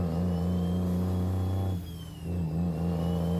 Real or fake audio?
real